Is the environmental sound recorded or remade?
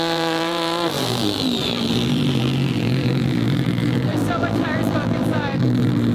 remade